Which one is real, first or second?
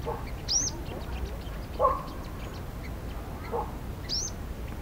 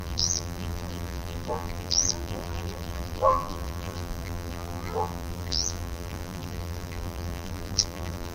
first